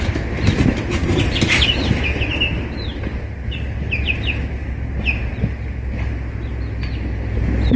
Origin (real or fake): real